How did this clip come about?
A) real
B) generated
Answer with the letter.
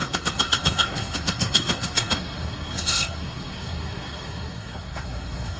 B